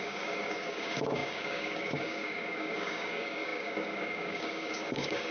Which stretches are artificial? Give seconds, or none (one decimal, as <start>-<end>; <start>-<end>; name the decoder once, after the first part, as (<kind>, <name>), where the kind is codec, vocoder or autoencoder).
0.0-5.3 (codec, DAC)